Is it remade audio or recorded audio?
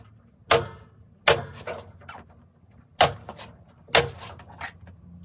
recorded